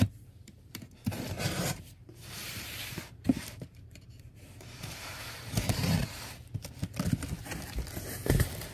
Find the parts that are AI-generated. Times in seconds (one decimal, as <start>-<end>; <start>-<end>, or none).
0.0-6.0